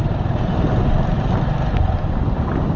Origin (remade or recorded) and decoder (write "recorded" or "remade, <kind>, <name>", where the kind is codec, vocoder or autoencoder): remade, vocoder, BigVGAN v2